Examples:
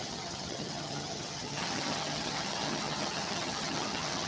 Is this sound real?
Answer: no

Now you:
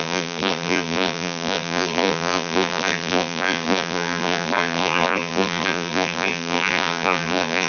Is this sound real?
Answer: no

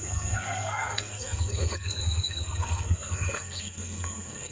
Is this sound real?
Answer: no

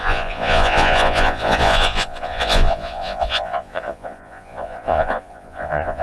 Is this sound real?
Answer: no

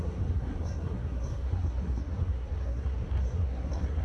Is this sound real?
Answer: no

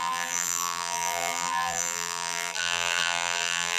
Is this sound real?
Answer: no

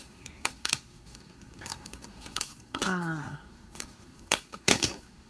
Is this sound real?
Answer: no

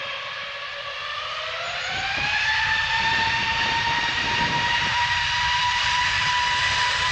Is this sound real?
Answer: no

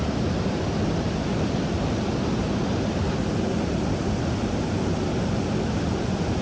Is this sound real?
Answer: yes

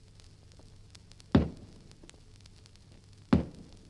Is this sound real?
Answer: yes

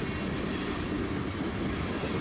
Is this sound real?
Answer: yes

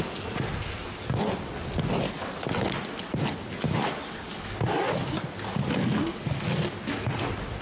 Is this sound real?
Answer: yes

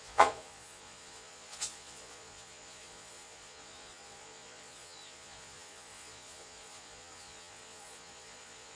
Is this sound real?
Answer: no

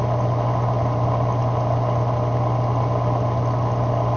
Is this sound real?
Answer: yes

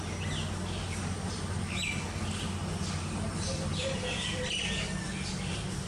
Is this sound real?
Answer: no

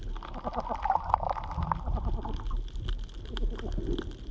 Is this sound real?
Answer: yes